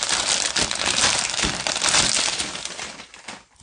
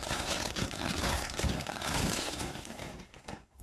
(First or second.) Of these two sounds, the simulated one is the second